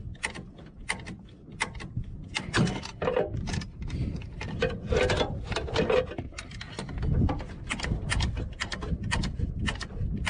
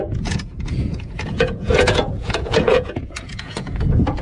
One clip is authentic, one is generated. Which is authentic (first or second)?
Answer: first